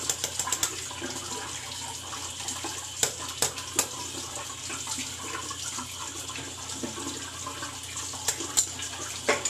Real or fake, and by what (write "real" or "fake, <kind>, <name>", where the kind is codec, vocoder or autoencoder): real